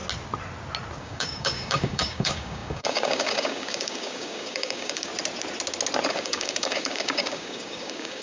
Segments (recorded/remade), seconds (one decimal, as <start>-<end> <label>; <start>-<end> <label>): 0.0-1.0 recorded; 1.0-5.1 remade; 5.1-6.1 recorded; 6.1-8.2 remade

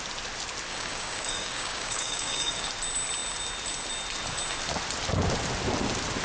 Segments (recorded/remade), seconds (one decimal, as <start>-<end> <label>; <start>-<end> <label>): 0.0-0.7 recorded; 0.7-2.7 remade; 2.7-6.2 recorded

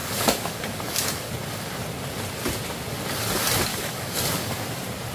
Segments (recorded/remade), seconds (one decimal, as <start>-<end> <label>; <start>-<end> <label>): 0.0-1.3 remade; 1.3-3.7 recorded; 3.7-4.6 remade; 4.6-5.1 recorded

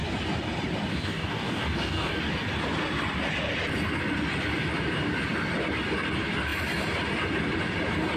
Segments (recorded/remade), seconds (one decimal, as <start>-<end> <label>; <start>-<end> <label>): 0.0-0.9 recorded; 0.9-2.2 remade; 2.2-8.2 recorded